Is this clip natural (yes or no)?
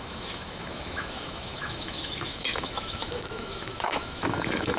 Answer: no